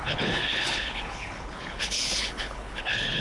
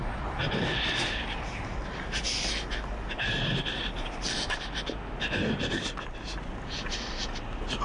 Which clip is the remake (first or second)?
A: first